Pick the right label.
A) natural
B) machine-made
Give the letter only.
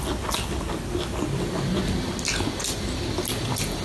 A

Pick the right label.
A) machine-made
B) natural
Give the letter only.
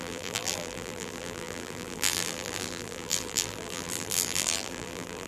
A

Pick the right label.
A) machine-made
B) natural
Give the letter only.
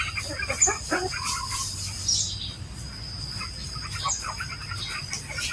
B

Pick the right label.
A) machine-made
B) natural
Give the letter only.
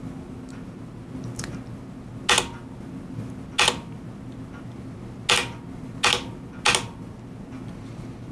B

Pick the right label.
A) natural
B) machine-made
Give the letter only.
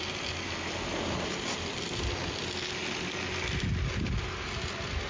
A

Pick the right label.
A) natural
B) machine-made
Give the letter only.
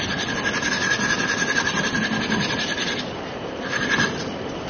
A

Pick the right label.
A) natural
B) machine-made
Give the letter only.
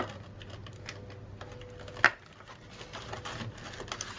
A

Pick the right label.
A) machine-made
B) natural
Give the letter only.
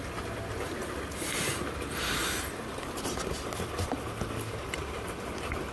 B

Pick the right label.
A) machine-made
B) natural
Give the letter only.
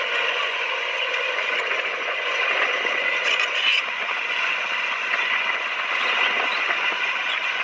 A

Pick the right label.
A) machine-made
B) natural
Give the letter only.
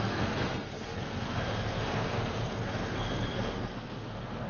A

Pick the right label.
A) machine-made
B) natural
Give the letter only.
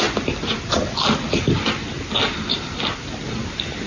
B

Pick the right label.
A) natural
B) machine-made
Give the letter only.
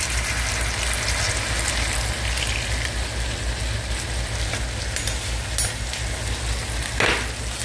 A